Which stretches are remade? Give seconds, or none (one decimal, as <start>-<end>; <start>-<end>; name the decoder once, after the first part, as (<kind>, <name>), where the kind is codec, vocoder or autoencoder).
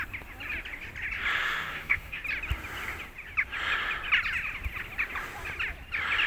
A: 1.4-2.2 (autoencoder, DAC-VAE)